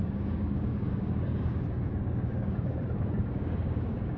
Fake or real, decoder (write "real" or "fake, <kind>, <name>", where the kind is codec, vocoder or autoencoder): fake, codec, DAC